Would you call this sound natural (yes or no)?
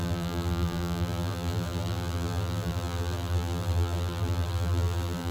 no